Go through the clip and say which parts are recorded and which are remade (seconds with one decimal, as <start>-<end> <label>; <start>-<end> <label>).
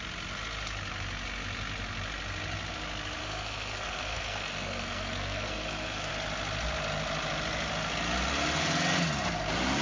0.0-3.2 recorded; 3.2-6.1 remade; 6.1-9.8 recorded